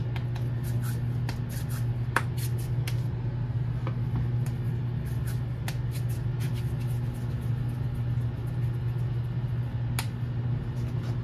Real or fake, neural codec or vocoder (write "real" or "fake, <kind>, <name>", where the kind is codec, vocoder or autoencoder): real